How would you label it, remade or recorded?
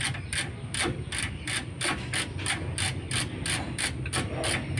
recorded